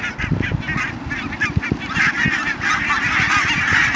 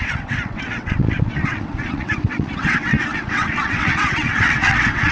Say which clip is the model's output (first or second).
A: second